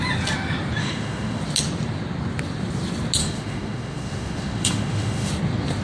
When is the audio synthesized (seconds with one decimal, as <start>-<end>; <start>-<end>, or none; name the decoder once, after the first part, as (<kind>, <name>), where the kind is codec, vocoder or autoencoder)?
0.8-1.4 (autoencoder, DAC-VAE); 3.2-5.3